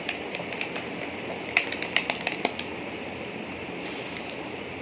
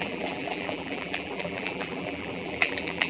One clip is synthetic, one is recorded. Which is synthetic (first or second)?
second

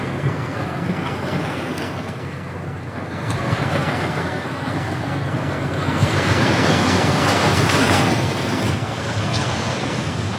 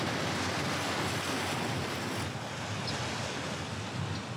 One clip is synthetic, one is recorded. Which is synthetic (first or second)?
first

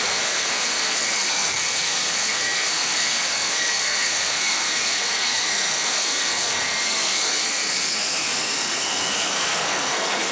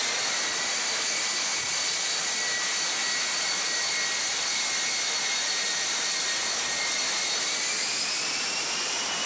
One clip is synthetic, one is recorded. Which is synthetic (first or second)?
first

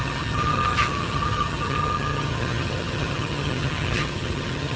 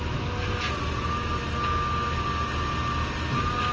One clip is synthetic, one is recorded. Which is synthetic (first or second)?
first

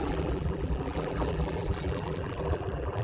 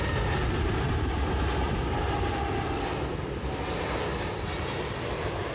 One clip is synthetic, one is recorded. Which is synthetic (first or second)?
first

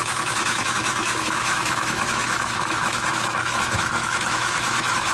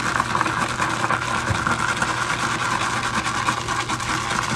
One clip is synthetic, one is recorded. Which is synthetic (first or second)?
first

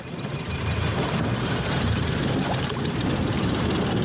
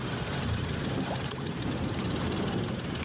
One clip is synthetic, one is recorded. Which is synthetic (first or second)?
first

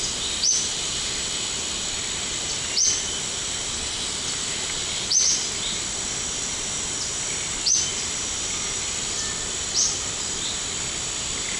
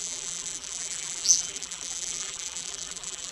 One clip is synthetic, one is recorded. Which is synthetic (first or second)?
second